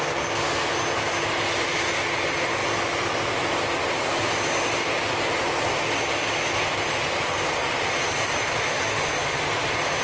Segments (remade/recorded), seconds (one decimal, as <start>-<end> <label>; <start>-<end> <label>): 0.0-10.0 recorded